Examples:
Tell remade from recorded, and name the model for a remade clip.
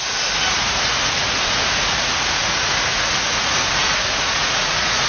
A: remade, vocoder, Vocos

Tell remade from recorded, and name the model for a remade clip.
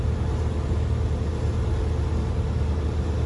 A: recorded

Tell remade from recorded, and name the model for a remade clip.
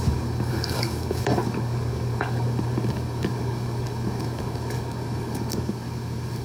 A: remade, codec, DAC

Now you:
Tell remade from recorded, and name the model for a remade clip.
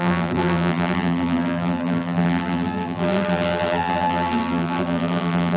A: remade, vocoder, BigVGAN v2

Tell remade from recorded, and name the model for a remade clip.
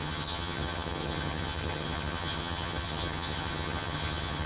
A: remade, vocoder, HiFi-GAN